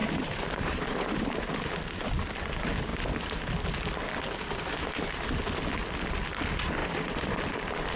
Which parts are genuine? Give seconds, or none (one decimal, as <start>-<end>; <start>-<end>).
1.5-6.8; 7.4-8.0